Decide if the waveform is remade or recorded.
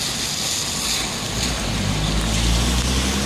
recorded